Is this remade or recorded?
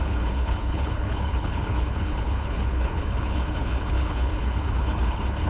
remade